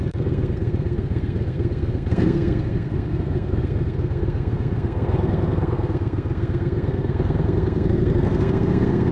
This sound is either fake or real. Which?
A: fake